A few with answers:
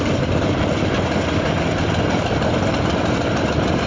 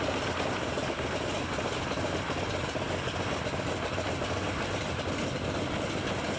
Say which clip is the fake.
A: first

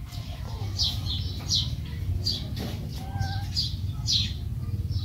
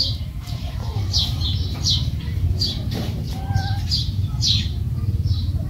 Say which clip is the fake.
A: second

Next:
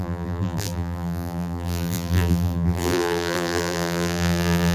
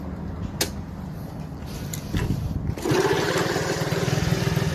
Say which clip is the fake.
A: first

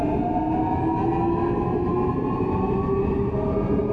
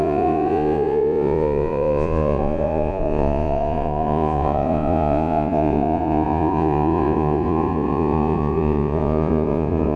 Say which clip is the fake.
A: second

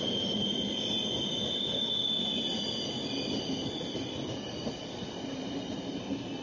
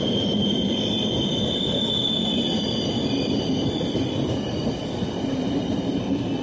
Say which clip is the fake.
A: second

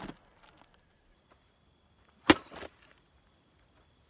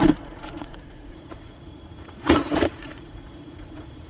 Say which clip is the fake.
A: second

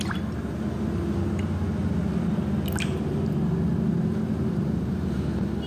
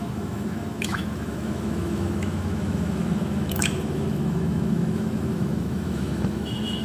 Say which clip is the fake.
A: second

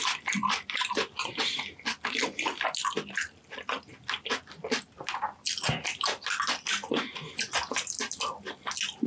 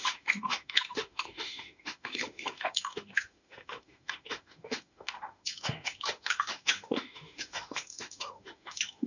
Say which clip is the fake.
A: second